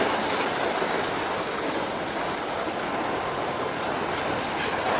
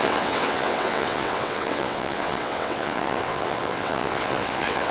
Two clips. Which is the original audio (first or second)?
first